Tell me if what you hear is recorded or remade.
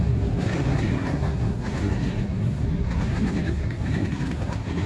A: remade